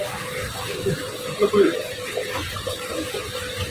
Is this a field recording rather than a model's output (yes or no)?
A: yes